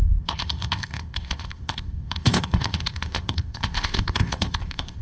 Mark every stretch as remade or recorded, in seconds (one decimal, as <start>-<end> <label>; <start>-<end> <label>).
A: 0.0-5.0 remade